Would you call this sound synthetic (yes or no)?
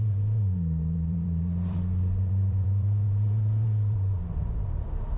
yes